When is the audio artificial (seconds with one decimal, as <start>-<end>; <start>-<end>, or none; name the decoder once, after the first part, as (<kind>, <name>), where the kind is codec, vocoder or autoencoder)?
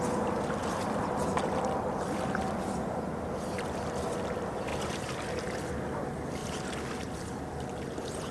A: none